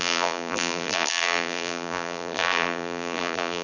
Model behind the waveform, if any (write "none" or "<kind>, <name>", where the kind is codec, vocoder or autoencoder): vocoder, BigVGAN v2